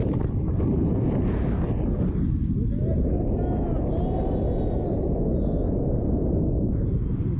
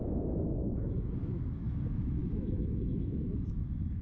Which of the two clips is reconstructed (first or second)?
second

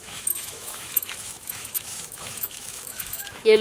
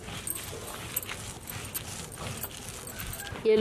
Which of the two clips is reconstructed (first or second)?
first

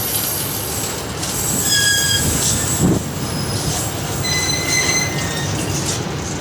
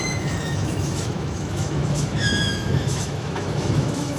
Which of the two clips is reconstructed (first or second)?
second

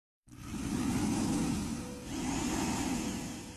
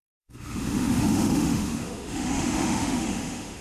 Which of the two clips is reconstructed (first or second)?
second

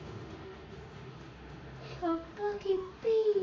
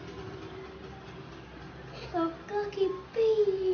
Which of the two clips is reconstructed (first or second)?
first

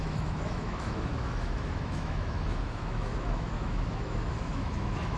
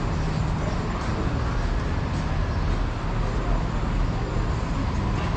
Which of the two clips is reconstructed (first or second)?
first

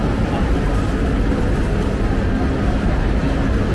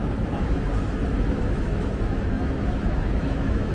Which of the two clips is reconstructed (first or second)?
second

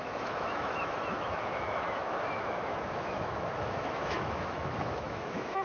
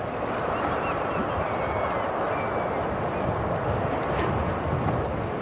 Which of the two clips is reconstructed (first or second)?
first